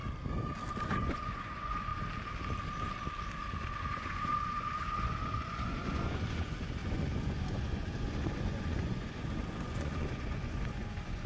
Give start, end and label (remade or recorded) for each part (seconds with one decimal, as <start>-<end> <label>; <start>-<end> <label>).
0.0-0.8 recorded; 0.8-1.9 remade; 1.9-3.8 recorded; 3.8-11.3 remade